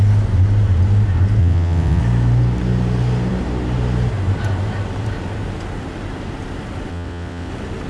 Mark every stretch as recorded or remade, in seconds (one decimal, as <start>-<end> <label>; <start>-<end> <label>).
0.0-1.4 recorded; 1.4-2.0 remade; 2.0-6.9 recorded; 6.9-7.5 remade; 7.5-7.9 recorded